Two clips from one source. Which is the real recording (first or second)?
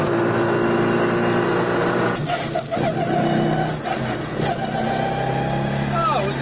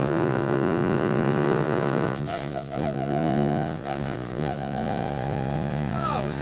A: first